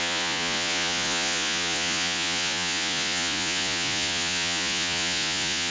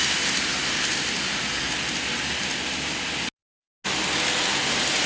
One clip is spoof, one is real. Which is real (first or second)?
second